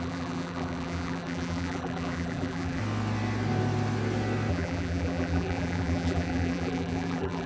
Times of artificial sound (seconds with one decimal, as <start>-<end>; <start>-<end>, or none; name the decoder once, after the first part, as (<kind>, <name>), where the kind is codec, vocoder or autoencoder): 0.0-2.8 (vocoder, BigVGAN v2); 4.5-7.5